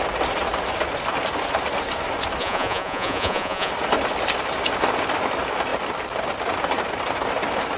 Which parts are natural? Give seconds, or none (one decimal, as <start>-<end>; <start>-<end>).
0.0-2.4; 3.7-7.8